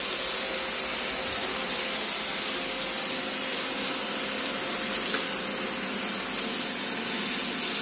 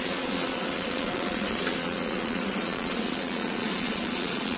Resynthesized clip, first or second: second